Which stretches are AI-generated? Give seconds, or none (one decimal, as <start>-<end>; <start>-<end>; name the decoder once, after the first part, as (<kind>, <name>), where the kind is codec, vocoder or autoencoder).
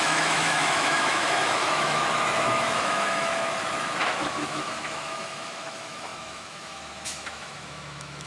0.0-8.3 (autoencoder, DAC-VAE)